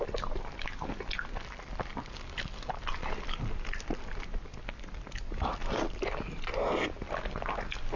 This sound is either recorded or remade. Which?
recorded